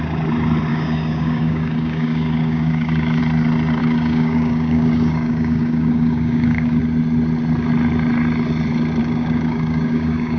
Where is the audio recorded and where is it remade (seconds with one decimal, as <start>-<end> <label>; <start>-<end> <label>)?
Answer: 0.0-0.7 recorded; 0.7-3.2 remade; 3.2-3.8 recorded; 3.8-6.8 remade; 6.8-9.0 recorded; 9.0-10.4 remade